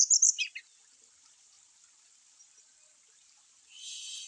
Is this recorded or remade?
recorded